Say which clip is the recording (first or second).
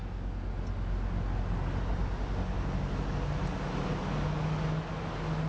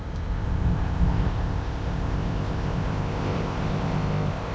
first